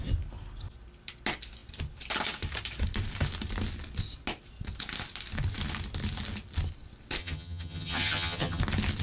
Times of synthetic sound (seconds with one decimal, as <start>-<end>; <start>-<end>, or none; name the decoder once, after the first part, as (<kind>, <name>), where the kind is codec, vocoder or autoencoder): 7.2-8.6 (vocoder, HiFi-GAN)